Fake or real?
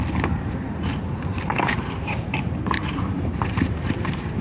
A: fake